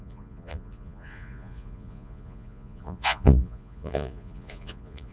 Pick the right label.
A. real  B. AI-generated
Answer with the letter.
B